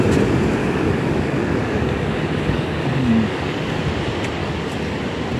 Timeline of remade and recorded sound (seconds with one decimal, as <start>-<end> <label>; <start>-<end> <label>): 0.0-0.6 recorded; 0.6-3.8 remade; 3.8-4.4 recorded; 4.4-5.0 remade; 5.0-5.4 recorded